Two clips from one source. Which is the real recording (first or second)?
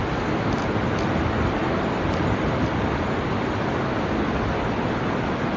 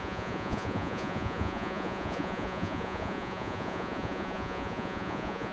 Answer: first